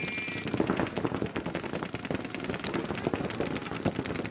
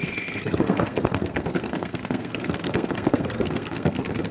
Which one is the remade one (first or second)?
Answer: second